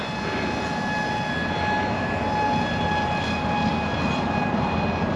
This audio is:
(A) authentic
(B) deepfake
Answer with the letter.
A